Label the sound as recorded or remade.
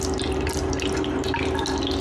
recorded